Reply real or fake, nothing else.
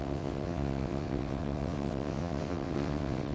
fake